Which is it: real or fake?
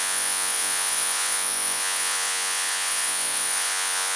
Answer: fake